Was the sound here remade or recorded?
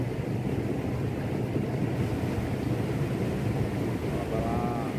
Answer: recorded